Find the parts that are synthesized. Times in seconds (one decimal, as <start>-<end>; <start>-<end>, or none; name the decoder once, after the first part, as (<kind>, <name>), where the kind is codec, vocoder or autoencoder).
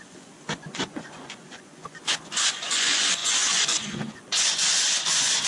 0.0-5.5 (vocoder, Vocos)